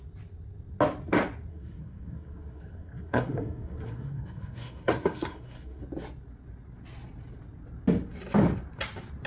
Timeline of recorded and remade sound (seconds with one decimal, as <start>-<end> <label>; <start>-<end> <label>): 0.0-1.5 recorded; 1.5-5.8 remade; 5.8-9.3 recorded